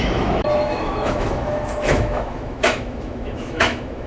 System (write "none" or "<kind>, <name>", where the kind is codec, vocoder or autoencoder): autoencoder, DAC-VAE